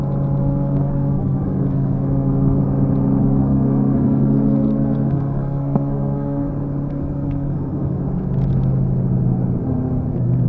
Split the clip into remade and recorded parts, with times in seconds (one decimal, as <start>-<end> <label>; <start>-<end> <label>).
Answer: 0.0-0.4 recorded; 0.4-2.6 remade; 2.6-3.2 recorded; 3.2-6.5 remade; 6.5-6.9 recorded; 6.9-8.0 remade; 8.0-10.5 recorded